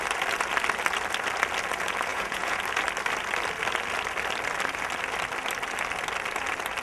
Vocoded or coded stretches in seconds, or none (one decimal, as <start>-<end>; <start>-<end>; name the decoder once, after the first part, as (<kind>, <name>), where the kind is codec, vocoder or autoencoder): 2.1-2.6 (vocoder, Vocos)